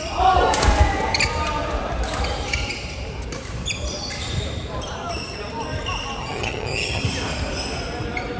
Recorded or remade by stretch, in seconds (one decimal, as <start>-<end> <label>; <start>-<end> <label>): 0.0-6.2 recorded; 6.2-7.0 remade; 7.0-8.4 recorded